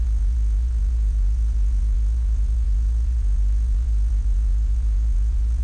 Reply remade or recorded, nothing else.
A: remade